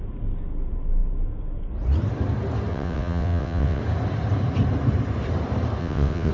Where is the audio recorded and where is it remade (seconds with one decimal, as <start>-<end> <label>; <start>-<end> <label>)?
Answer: 0.0-2.7 recorded; 2.7-3.8 remade; 3.8-5.8 recorded; 5.8-6.3 remade